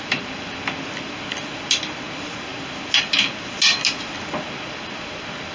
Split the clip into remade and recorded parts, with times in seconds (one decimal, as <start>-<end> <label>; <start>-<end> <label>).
0.0-5.5 recorded